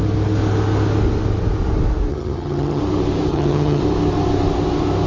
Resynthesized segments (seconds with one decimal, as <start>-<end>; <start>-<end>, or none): 2.1-2.8; 3.3-3.8